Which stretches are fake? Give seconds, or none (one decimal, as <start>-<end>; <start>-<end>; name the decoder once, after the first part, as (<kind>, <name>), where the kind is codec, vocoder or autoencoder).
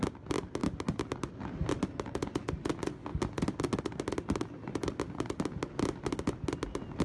none